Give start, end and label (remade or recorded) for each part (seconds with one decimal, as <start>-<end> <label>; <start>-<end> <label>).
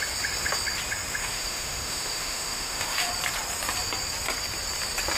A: 0.0-1.2 recorded; 1.2-3.1 remade; 3.1-5.2 recorded